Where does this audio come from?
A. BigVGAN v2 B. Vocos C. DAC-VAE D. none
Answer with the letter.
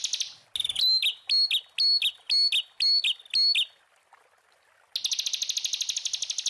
D